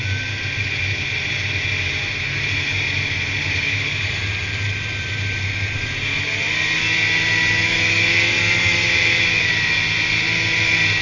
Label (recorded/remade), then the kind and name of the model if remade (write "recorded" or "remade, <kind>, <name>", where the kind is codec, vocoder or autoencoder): recorded